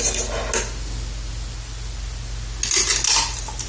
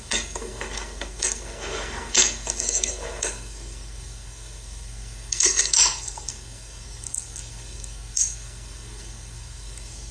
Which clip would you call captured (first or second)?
first